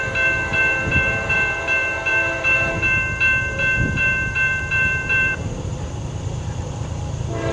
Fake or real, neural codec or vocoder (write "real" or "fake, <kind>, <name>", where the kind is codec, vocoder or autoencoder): fake, vocoder, BigVGAN v2